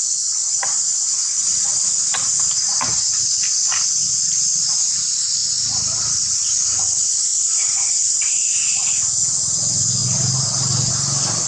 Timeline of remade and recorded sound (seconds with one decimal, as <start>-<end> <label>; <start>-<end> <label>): 0.0-11.5 recorded